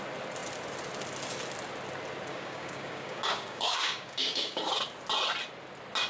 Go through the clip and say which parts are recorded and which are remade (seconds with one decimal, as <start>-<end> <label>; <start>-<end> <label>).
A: 0.0-2.3 recorded; 2.3-4.6 remade; 4.6-6.1 recorded